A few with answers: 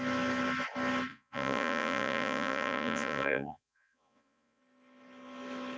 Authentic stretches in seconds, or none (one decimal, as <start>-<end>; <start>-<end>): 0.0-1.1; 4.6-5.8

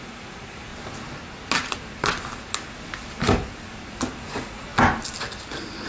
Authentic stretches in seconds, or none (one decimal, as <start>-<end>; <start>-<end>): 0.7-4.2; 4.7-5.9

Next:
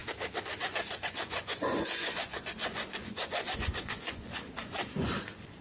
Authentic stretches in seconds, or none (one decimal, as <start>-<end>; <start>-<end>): 0.0-0.6

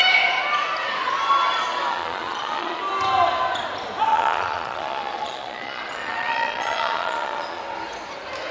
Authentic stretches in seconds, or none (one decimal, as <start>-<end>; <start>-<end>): 0.0-1.9; 2.8-4.1; 7.6-8.5